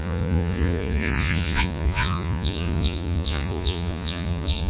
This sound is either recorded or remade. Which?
remade